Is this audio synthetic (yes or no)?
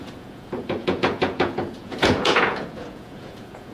yes